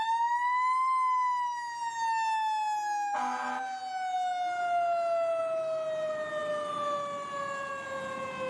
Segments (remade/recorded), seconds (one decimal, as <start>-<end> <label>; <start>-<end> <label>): 0.0-8.5 recorded